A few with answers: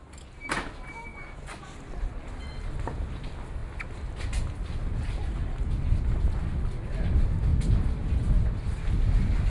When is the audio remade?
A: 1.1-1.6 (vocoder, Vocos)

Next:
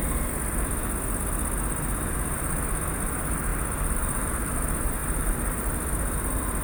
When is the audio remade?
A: 3.5-4.5 (vocoder, BigVGAN v2); 5.0-5.7